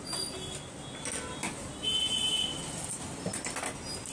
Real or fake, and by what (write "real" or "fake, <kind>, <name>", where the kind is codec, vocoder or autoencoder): real